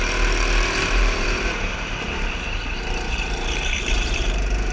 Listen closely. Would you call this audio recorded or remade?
remade